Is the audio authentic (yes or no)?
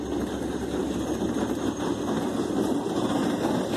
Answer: yes